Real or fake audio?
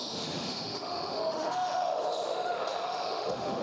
fake